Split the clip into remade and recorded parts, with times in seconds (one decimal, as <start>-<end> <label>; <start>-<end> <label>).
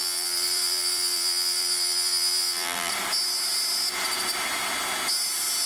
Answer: 0.0-2.9 remade; 2.9-5.7 recorded